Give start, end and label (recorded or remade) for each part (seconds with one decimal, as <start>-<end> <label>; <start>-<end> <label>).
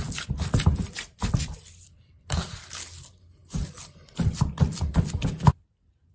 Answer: 0.0-0.7 recorded; 0.7-2.6 remade; 2.6-6.1 recorded